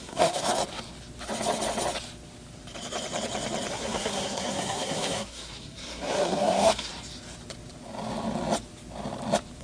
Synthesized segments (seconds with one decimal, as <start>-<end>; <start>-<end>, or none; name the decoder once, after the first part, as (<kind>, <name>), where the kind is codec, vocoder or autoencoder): 0.0-0.6 (codec, SNAC); 3.7-6.9